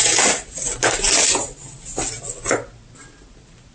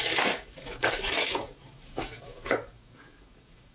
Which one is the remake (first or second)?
second